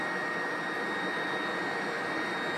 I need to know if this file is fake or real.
real